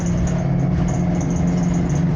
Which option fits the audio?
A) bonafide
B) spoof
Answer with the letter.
A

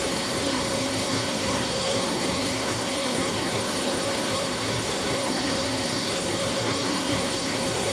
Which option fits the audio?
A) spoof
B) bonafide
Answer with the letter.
A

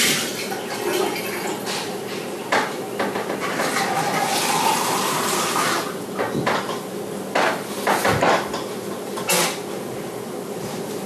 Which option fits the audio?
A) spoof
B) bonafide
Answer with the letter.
B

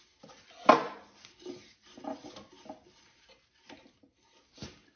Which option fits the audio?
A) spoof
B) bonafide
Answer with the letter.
B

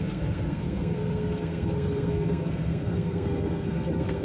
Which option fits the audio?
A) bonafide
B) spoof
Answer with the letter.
B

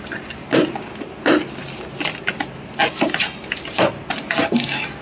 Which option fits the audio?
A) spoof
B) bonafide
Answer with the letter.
B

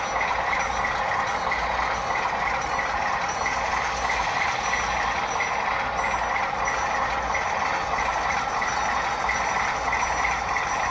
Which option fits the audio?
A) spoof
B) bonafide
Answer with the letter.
B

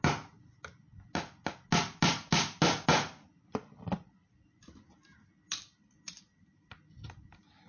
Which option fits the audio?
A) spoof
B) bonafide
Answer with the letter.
B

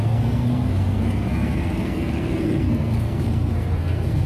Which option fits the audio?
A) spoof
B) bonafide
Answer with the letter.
A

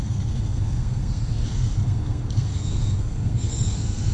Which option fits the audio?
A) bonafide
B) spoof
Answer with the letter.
B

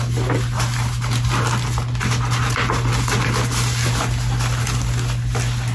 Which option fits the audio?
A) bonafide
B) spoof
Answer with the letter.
A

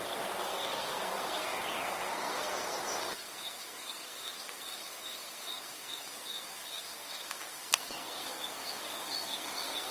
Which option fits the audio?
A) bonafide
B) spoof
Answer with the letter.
B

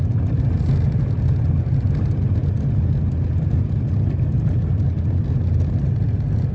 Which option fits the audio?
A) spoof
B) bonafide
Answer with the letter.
B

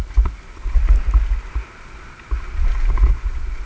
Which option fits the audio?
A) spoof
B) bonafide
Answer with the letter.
B